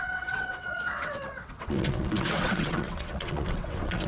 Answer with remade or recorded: remade